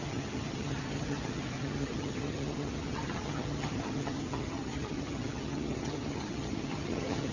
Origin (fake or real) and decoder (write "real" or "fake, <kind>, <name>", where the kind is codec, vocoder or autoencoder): fake, vocoder, HiFi-GAN